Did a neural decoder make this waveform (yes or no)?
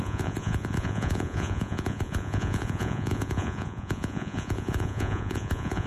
yes